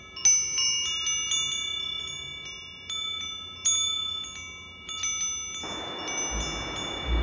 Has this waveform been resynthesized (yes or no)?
no